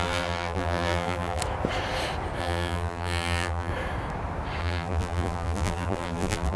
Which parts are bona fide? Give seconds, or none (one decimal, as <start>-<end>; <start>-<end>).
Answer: 1.4-2.4; 3.7-4.6